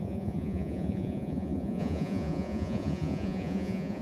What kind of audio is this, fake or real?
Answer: fake